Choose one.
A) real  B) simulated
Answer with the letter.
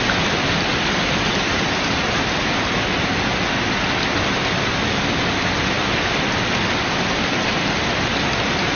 A